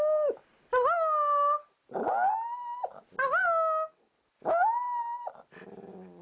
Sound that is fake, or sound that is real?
real